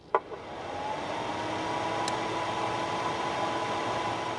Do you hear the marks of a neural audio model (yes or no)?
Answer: no